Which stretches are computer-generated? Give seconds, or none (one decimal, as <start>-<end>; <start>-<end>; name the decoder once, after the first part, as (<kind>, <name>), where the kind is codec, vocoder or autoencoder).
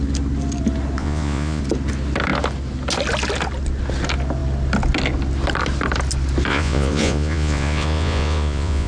1.0-1.6 (vocoder, Vocos); 6.5-8.9